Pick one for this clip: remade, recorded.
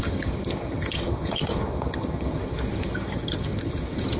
remade